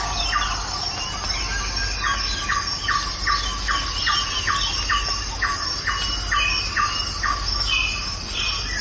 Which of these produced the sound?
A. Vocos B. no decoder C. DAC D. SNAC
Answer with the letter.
B